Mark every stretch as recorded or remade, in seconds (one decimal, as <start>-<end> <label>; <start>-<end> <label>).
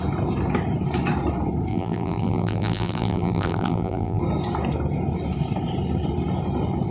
0.0-1.7 recorded; 1.7-4.2 remade; 4.2-6.9 recorded